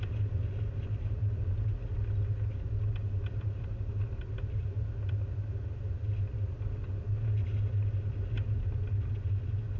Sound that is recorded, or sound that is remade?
recorded